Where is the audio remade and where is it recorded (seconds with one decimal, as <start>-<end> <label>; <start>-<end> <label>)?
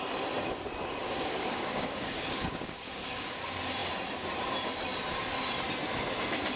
0.0-1.0 recorded; 1.0-3.3 remade; 3.3-6.6 recorded